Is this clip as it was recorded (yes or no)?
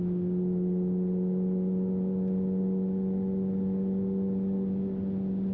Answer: yes